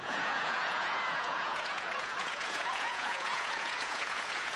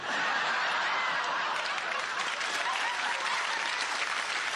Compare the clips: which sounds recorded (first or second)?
second